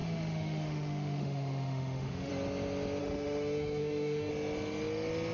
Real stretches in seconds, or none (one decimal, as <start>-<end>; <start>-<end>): 2.3-3.0; 4.3-5.3